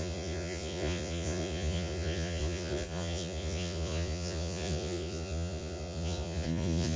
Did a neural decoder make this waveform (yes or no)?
yes